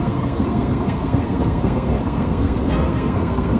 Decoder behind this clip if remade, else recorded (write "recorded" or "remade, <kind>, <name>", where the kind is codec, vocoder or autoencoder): remade, codec, SNAC